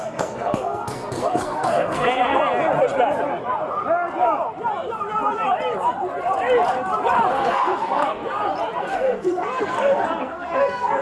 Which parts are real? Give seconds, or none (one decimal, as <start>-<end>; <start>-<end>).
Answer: 2.4-7.3; 8.2-8.8